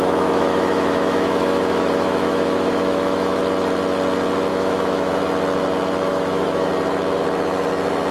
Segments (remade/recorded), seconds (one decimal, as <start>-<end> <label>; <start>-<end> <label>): 0.0-3.4 remade; 3.4-4.5 recorded; 4.5-5.1 remade; 5.1-6.1 recorded; 6.1-6.7 remade; 6.7-8.1 recorded